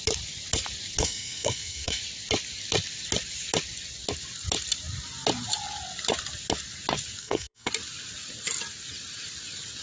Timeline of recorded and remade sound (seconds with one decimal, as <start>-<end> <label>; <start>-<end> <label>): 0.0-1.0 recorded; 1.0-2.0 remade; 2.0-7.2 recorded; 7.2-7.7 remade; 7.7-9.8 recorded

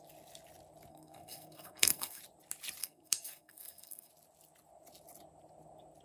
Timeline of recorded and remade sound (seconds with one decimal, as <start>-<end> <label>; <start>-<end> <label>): 0.0-0.9 recorded; 0.9-2.2 remade; 2.2-2.8 recorded; 2.8-4.1 remade; 4.1-6.0 recorded

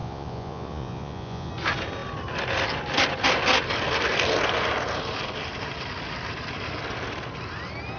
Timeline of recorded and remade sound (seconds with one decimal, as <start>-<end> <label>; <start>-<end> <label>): 0.0-1.5 remade; 1.5-8.0 recorded

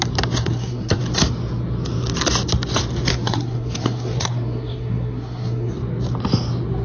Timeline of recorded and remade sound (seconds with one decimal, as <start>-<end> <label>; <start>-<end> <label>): 0.0-0.4 recorded; 0.4-1.0 remade; 1.0-3.1 recorded; 3.1-5.7 remade; 5.7-6.8 recorded